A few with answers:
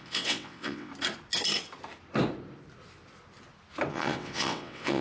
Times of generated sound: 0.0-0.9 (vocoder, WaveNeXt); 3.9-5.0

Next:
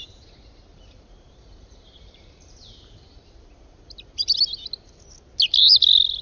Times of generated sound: 0.7-4.3 (vocoder, BigVGAN v2)

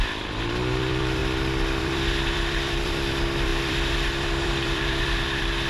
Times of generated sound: 0.0-1.2 (vocoder, BigVGAN v2); 1.8-5.7

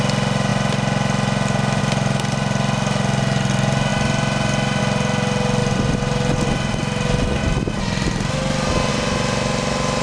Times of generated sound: 5.6-6.7 (vocoder, BigVGAN v2)

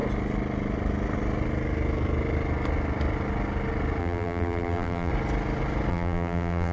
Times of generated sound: 4.0-5.1 (vocoder, BigVGAN v2); 5.9-6.7

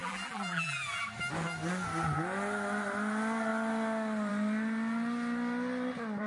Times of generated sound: 0.0-1.0 (vocoder, BigVGAN v2)

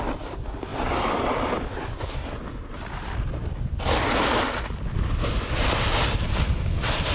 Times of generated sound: none